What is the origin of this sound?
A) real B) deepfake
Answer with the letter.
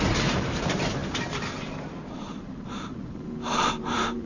B